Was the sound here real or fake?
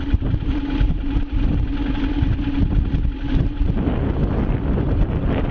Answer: real